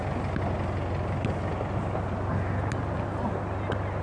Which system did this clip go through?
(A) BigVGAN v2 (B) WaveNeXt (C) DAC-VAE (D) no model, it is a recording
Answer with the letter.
D